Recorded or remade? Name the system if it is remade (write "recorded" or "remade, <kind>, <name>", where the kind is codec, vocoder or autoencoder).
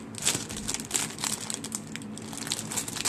recorded